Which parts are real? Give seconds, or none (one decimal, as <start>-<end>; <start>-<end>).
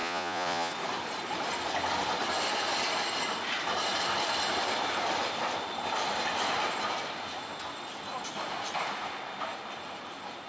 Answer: 0.7-10.5